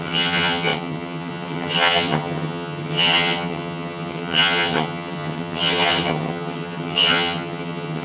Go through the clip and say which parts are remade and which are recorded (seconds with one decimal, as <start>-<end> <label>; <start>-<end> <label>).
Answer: 0.0-8.0 remade

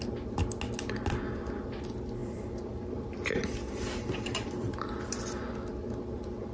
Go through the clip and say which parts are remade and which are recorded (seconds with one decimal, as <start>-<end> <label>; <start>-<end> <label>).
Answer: 0.0-2.2 recorded; 2.2-4.5 remade; 4.5-6.5 recorded

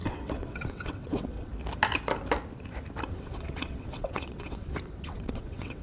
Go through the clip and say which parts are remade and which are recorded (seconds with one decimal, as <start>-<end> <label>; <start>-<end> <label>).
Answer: 0.0-1.5 remade; 1.5-3.1 recorded; 3.1-5.8 remade

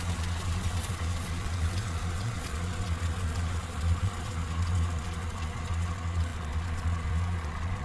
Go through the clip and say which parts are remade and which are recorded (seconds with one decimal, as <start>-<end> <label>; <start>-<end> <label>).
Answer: 0.0-7.8 remade

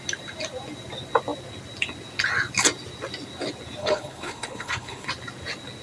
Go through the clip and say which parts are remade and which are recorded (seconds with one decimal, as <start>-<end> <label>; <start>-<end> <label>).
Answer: 0.0-3.8 recorded; 3.8-5.1 remade; 5.1-5.8 recorded

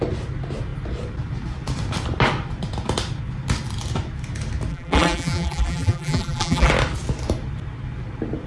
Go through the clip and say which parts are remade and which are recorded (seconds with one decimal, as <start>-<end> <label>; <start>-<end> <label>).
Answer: 0.0-4.7 recorded; 4.7-6.7 remade; 6.7-8.5 recorded